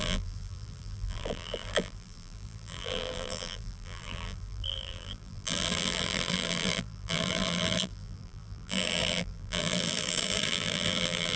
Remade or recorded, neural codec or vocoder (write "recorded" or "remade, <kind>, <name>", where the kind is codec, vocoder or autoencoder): remade, vocoder, BigVGAN v2